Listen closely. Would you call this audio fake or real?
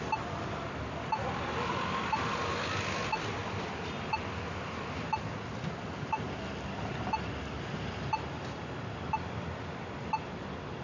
real